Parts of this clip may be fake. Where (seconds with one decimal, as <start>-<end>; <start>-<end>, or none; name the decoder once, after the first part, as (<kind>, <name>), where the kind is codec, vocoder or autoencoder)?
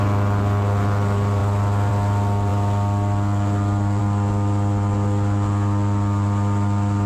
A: none